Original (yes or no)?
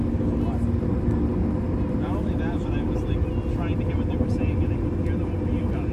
yes